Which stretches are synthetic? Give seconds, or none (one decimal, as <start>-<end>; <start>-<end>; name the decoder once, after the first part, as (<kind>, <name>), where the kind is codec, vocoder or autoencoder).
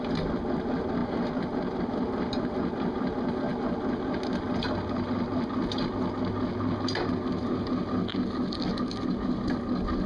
none